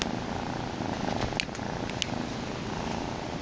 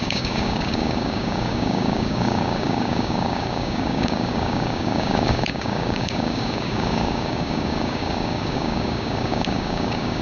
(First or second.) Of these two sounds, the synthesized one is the second